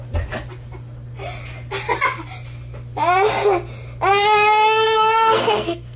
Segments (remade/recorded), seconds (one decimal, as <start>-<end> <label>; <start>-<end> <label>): 0.0-4.1 recorded; 4.1-6.0 remade